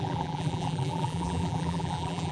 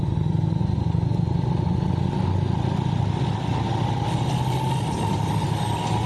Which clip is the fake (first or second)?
first